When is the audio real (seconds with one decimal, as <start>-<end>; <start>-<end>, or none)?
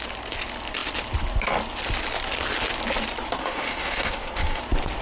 0.0-3.4; 4.6-5.0